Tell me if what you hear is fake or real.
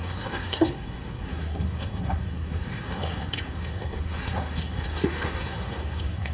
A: fake